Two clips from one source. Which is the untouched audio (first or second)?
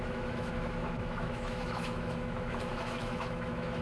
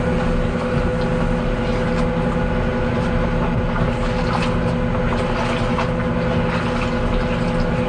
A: second